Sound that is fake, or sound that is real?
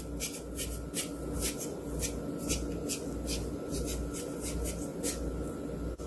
real